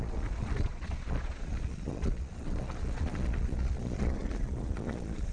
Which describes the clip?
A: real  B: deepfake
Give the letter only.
B